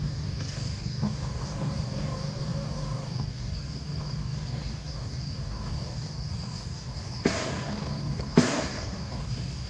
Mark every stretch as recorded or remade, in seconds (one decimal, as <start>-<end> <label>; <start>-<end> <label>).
0.0-9.7 remade